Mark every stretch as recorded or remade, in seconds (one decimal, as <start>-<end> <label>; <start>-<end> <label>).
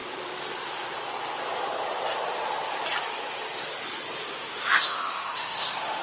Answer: 0.0-4.2 recorded; 4.2-6.0 remade